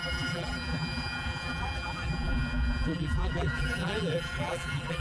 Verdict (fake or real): fake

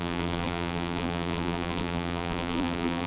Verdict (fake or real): fake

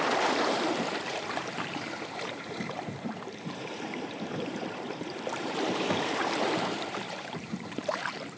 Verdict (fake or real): fake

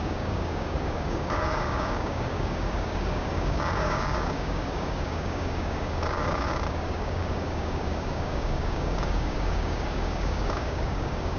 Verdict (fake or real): fake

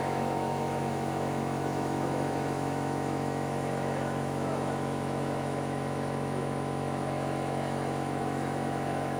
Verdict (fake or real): fake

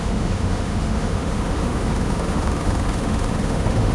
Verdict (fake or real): fake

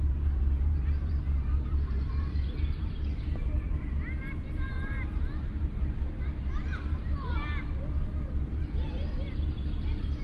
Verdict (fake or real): fake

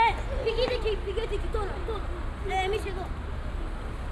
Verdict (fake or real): real